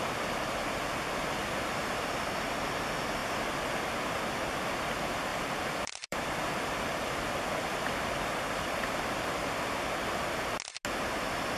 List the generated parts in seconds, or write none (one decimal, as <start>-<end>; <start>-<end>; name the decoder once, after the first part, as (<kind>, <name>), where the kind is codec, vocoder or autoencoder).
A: 5.3-9.3 (vocoder, BigVGAN v2)